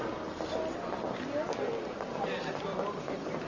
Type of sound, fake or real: real